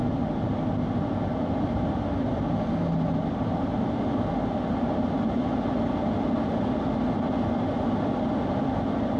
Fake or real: real